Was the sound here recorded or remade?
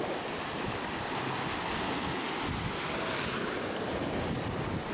recorded